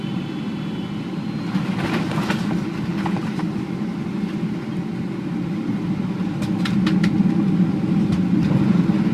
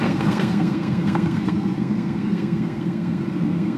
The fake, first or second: second